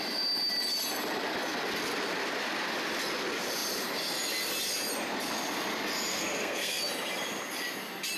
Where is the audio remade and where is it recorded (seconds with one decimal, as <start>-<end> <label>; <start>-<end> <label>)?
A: 0.0-6.1 recorded; 6.1-6.8 remade; 6.8-8.2 recorded